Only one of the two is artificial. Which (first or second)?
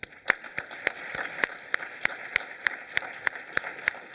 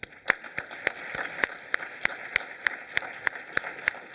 first